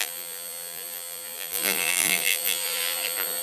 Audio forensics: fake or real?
fake